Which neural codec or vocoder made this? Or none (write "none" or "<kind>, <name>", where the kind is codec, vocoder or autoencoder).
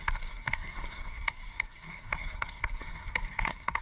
codec, SNAC